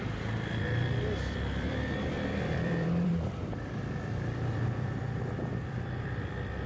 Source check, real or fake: fake